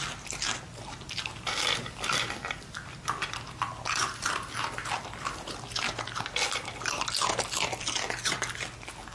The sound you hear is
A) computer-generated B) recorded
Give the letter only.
B